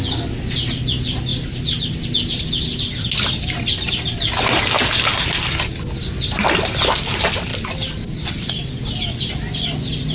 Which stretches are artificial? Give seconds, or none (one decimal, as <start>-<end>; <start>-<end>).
none